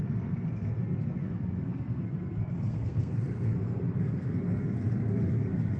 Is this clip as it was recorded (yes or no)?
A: no